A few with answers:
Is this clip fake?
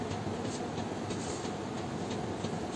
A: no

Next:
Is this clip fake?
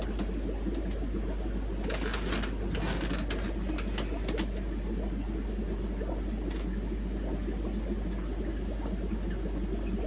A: no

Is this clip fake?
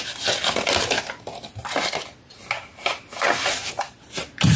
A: no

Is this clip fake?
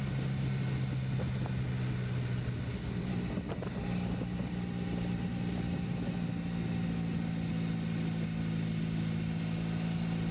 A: no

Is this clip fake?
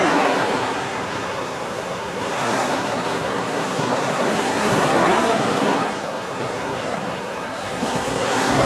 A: yes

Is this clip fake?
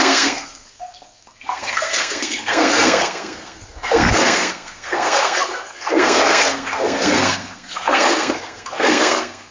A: yes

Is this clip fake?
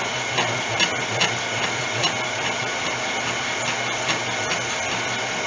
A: no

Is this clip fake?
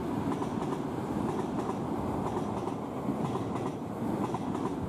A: no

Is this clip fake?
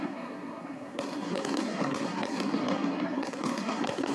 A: yes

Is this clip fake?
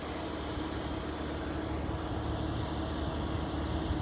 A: no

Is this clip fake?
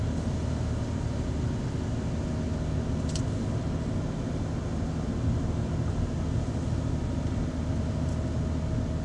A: no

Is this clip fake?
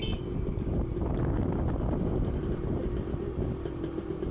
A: no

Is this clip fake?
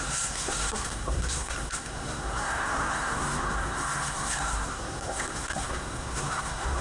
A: yes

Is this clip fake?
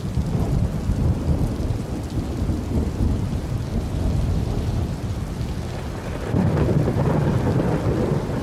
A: no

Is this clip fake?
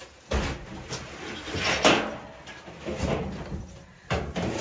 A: no